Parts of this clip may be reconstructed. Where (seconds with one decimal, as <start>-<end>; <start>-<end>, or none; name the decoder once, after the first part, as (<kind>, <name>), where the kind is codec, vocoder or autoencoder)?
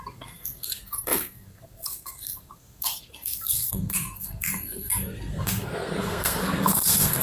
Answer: 0.0-7.2 (codec, SNAC)